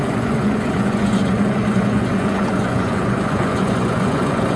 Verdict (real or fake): fake